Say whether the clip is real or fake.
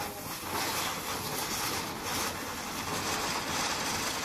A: real